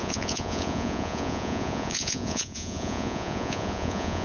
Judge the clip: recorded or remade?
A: remade